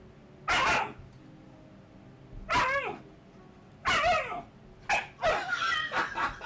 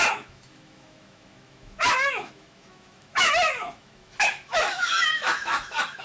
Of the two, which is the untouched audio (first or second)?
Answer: first